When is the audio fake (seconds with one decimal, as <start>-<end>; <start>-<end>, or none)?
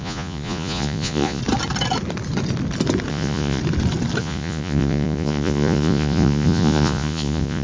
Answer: 0.0-1.4; 3.1-3.6; 4.2-7.6